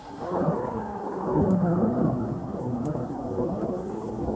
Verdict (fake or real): fake